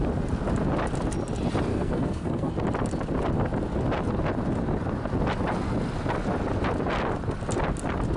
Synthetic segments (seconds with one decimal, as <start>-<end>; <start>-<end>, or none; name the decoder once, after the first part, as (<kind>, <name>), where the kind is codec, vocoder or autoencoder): 1.7-2.5 (codec, SNAC)